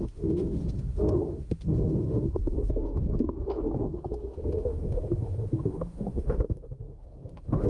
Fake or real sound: fake